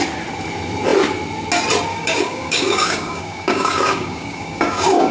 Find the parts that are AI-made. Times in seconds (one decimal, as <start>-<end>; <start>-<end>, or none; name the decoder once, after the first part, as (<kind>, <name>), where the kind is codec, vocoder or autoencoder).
1.9-5.1 (codec, DAC)